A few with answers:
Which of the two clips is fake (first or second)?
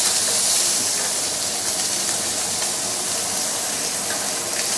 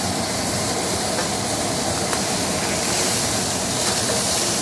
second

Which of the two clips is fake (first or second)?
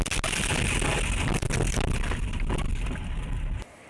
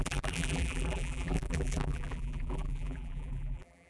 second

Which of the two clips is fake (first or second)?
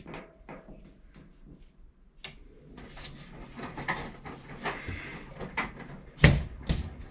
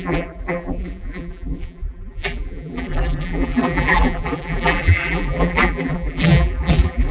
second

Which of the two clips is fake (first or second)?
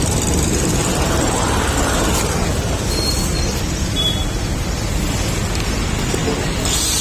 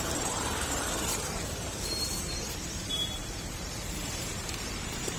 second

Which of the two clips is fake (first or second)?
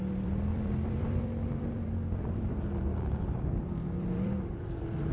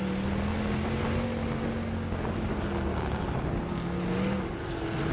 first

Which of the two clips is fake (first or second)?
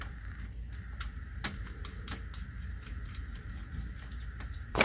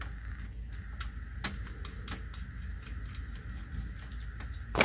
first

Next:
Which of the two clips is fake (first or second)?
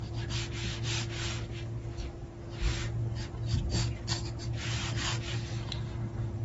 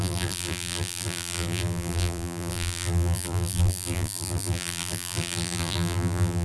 second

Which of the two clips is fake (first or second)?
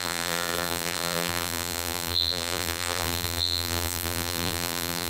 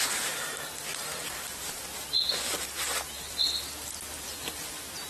first